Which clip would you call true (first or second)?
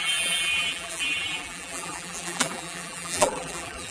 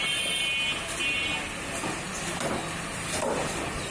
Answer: second